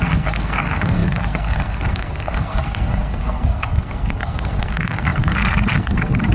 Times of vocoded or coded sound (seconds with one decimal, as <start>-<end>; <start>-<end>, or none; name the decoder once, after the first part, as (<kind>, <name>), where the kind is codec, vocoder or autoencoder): 0.0-6.3 (codec, SNAC)